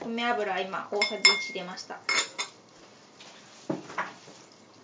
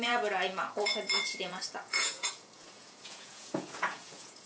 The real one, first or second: first